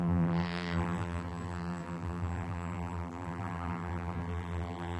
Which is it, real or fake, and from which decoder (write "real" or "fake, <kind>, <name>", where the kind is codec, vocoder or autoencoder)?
fake, vocoder, BigVGAN v2